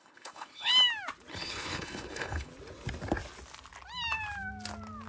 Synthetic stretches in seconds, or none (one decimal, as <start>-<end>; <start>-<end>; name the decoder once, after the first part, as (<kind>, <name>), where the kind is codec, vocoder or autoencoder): 0.0-0.7 (codec, HILCodec); 1.3-2.5